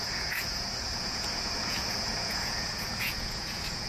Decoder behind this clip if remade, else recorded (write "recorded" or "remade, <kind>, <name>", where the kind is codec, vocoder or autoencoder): remade, vocoder, Vocos